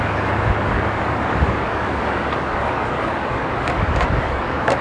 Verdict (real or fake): fake